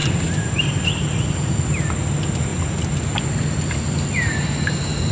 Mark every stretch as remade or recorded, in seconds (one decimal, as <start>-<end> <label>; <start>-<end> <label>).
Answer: 0.0-5.1 recorded